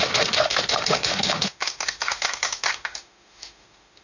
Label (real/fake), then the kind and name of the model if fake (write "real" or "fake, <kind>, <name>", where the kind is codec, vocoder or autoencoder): fake, autoencoder, DAC-VAE